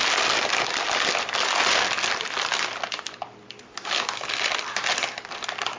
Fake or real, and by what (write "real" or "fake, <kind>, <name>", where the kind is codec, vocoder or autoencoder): real